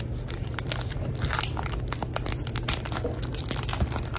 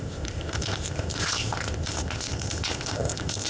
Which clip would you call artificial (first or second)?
second